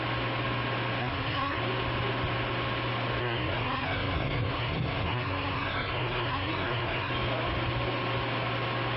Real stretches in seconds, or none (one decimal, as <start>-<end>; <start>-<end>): 0.0-1.0; 1.6-3.2; 7.1-9.0